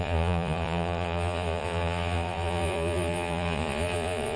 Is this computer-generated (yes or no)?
yes